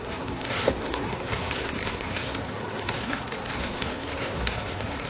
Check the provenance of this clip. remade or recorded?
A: remade